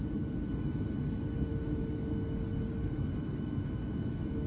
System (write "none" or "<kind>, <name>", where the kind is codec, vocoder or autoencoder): autoencoder, DAC-VAE